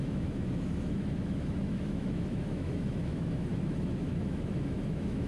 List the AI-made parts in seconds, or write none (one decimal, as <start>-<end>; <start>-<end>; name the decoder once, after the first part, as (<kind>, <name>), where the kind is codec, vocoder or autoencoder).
0.0-5.3 (autoencoder, DAC-VAE)